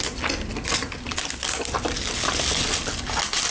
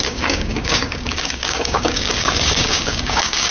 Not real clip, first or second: second